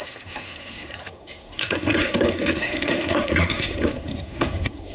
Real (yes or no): no